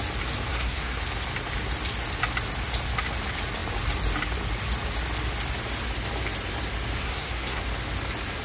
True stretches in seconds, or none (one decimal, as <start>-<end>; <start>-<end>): 0.0-0.5; 1.0-7.0; 7.6-8.4